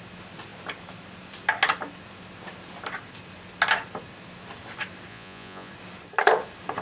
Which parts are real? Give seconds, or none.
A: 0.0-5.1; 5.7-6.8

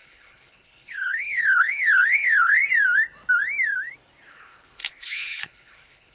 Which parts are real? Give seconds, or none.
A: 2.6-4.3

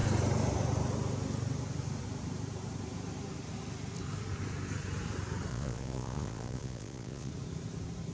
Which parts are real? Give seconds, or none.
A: 0.0-5.5; 7.3-8.1

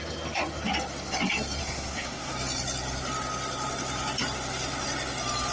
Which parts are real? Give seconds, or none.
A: 0.0-1.6; 2.3-5.5

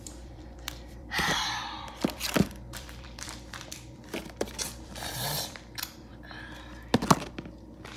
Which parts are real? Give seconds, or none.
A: 6.1-8.0

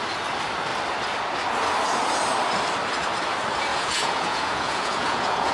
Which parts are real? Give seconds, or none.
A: 0.0-3.7